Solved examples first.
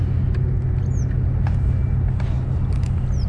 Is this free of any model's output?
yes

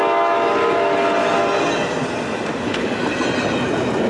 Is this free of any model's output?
yes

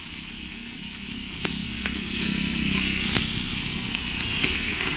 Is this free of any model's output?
no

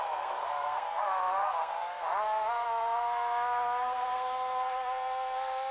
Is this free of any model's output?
no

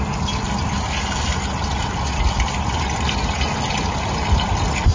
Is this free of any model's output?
yes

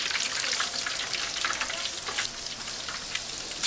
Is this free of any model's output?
yes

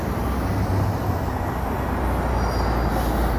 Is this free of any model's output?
yes